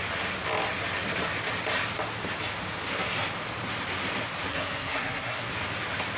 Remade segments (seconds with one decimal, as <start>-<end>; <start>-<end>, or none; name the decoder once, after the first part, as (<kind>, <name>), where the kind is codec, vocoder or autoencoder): 4.5-5.5 (codec, SNAC)